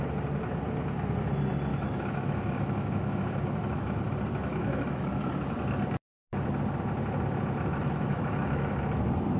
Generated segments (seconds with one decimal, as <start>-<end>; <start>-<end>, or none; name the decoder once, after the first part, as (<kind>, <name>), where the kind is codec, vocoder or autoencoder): 1.7-4.1 (autoencoder, DAC-VAE); 4.5-5.3; 7.7-8.8